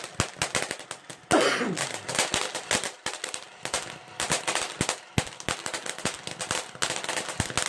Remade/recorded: recorded